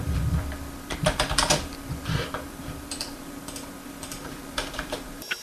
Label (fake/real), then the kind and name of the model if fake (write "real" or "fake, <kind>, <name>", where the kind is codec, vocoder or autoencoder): fake, vocoder, BigVGAN v2